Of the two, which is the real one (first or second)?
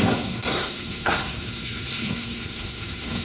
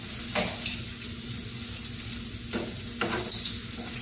second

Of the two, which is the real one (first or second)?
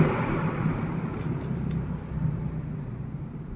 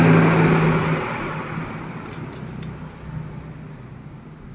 second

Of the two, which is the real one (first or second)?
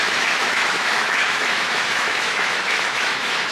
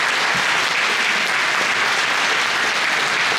second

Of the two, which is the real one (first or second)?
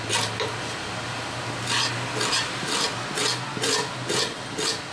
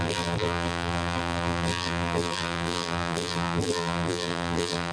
first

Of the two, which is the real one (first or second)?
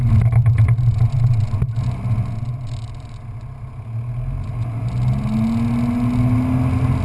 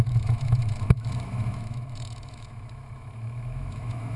first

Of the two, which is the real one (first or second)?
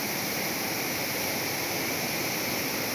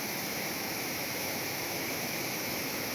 first